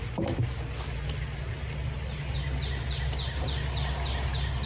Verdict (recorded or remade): recorded